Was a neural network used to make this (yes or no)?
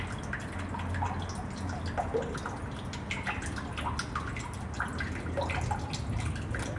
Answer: no